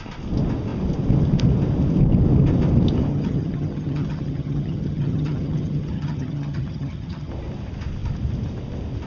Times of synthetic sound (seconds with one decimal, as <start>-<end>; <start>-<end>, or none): 3.1-7.3